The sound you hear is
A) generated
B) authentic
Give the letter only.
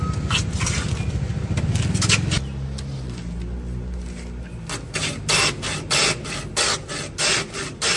B